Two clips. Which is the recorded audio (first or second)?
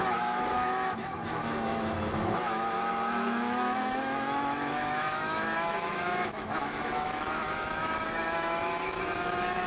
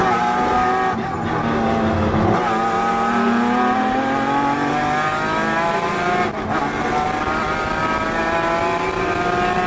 second